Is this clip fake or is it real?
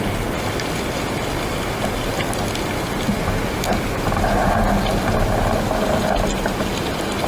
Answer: real